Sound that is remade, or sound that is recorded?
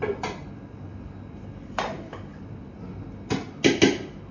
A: recorded